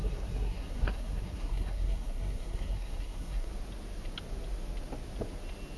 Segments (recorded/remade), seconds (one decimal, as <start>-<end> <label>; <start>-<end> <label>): 0.0-3.5 remade; 3.5-5.8 recorded